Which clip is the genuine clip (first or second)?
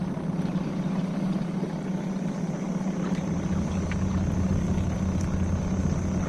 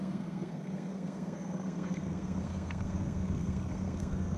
first